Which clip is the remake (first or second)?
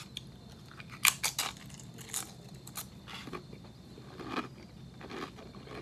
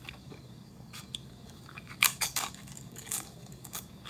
second